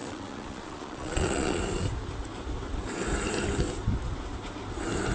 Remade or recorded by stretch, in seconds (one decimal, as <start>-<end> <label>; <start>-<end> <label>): 0.0-1.6 remade; 1.6-5.1 recorded